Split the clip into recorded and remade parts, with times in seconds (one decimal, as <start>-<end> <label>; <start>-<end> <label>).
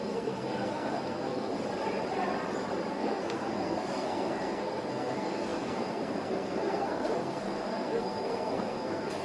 0.0-1.5 remade; 1.5-2.9 recorded; 2.9-9.2 remade